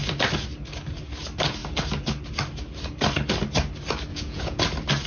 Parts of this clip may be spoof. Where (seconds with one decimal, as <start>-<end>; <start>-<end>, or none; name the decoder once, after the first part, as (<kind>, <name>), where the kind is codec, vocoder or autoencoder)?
4.1-4.6 (vocoder, Vocos)